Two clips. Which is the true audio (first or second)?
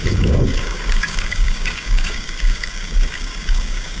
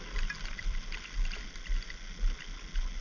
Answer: second